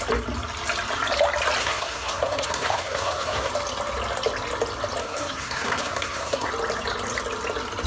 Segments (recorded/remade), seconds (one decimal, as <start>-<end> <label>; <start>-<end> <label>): 0.0-1.6 recorded; 1.6-3.5 remade; 3.5-5.0 recorded; 5.0-6.5 remade; 6.5-7.9 recorded